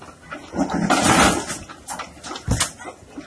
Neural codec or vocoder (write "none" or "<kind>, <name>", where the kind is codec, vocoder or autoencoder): none